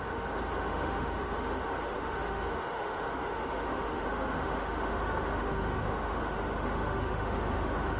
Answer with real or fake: fake